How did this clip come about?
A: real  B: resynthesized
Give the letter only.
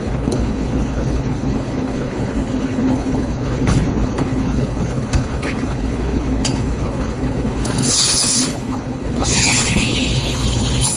B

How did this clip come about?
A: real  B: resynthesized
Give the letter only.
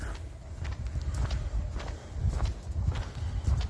A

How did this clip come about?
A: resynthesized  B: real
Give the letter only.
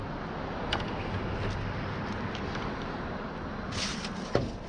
B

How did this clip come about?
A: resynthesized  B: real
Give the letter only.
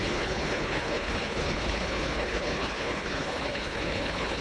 A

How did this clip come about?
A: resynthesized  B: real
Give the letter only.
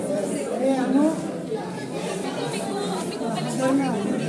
B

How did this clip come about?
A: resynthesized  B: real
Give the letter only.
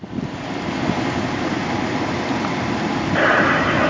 B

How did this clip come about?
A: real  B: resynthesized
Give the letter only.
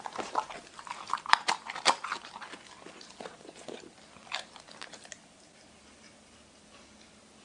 A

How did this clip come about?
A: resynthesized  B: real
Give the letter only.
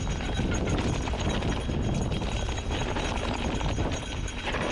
B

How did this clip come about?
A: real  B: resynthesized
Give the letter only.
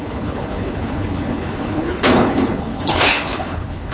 B